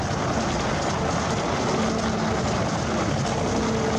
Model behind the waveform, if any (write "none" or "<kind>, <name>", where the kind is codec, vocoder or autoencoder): none